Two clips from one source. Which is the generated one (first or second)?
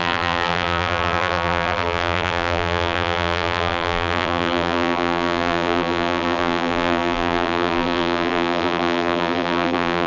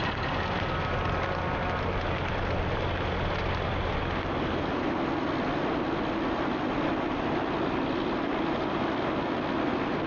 first